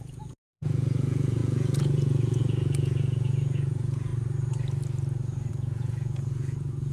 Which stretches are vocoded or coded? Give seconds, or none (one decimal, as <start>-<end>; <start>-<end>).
0.0-4.1; 5.5-6.9